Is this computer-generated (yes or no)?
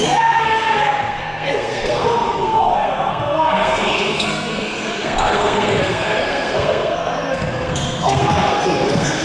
yes